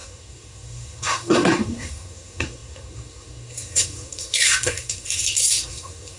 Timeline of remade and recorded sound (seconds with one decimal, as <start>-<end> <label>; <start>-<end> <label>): 0.0-6.2 remade

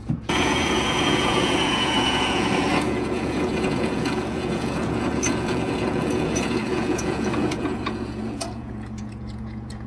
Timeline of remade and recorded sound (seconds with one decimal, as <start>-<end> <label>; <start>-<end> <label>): 0.0-9.9 remade